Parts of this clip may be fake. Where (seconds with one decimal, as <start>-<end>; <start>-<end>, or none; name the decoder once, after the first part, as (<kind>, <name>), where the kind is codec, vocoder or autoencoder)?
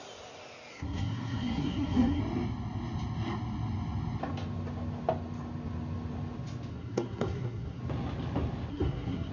0.7-2.2 (codec, SNAC); 6.7-7.8; 8.7-9.3